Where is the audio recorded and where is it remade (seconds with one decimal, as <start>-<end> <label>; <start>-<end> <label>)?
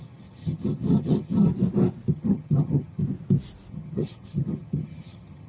0.0-1.5 remade; 1.5-2.1 recorded; 2.1-3.0 remade; 3.0-3.7 recorded; 3.7-5.5 remade